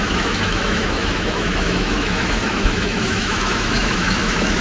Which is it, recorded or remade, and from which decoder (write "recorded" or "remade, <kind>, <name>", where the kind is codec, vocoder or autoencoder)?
remade, autoencoder, DAC-VAE